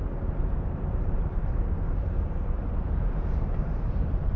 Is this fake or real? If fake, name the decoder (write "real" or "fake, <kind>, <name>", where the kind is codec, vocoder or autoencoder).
fake, vocoder, BigVGAN v2